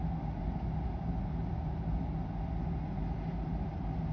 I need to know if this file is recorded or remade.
recorded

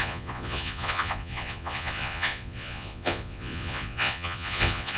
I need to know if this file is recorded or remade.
remade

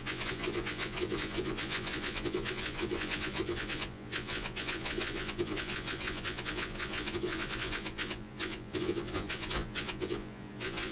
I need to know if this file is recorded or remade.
remade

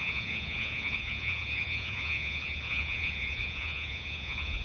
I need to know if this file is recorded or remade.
remade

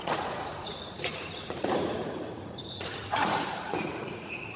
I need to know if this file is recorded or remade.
remade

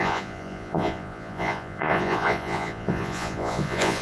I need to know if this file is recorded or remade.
remade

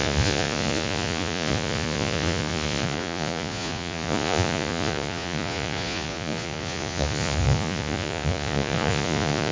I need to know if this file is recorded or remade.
remade